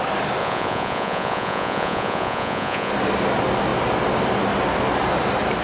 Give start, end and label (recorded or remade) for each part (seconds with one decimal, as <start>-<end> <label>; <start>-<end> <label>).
0.0-0.4 recorded; 0.4-2.9 remade; 2.9-5.6 recorded